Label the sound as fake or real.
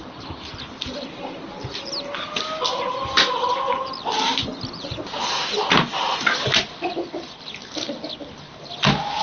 real